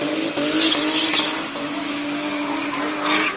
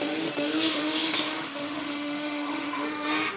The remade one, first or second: second